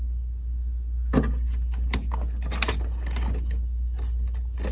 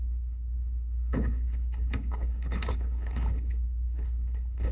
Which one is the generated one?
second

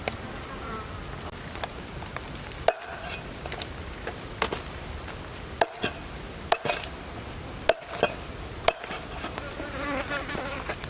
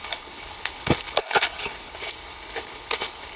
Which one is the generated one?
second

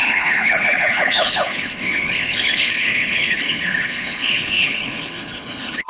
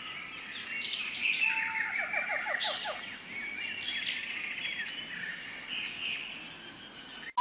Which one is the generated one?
first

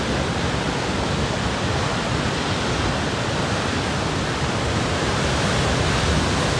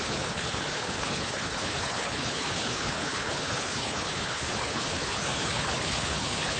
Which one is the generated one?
second